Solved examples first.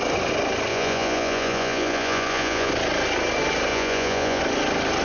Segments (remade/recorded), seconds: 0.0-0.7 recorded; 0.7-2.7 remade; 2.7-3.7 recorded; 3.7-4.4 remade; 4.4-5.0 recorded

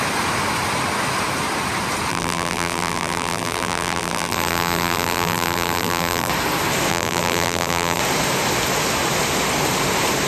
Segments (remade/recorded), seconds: 0.0-2.1 recorded; 2.1-6.3 remade; 6.3-6.9 recorded; 6.9-8.0 remade; 8.0-10.3 recorded

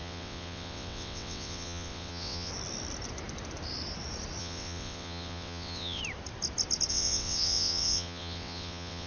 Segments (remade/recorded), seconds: 0.0-2.5 remade; 2.5-4.4 recorded; 4.4-6.0 remade; 6.0-6.9 recorded; 6.9-9.1 remade

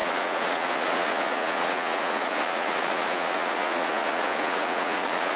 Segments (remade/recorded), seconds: 0.0-5.4 remade

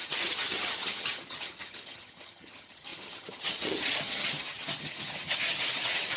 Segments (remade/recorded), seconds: 0.0-6.2 remade

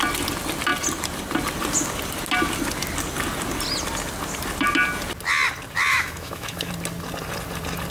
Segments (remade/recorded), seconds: 0.0-5.9 recorded; 5.9-6.7 remade; 6.7-7.9 recorded